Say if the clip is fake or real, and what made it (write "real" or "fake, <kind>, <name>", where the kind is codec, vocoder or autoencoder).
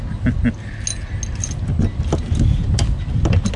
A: real